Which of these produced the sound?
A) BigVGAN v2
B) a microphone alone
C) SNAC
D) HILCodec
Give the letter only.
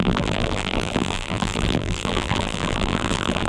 A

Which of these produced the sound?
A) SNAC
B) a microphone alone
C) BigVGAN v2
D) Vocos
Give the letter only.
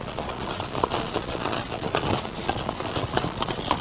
D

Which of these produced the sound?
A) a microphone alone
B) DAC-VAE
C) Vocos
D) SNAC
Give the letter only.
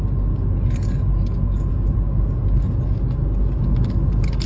A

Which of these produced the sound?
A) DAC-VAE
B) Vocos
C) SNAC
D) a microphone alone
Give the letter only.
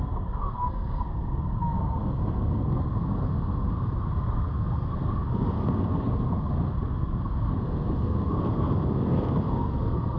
C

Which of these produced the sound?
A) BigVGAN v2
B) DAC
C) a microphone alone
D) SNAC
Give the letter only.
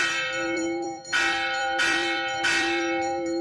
A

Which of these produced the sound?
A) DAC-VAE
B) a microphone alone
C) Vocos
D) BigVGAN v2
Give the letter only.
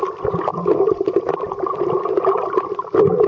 D